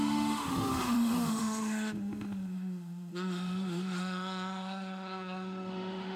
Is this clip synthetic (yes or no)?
yes